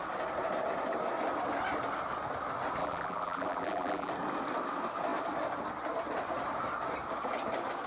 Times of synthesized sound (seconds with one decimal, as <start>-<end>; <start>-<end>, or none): 2.8-4.1